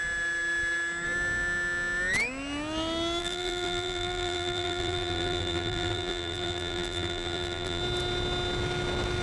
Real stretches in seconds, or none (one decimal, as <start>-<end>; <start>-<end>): 0.0-3.2; 7.8-9.2